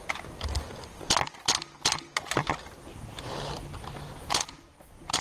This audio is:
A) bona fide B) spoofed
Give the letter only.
A